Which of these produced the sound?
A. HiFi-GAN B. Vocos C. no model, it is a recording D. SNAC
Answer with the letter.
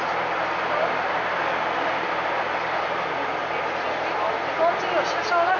C